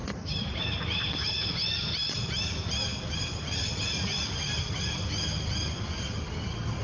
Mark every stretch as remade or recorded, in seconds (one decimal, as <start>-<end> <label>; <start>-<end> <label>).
0.0-0.5 remade; 0.5-6.8 recorded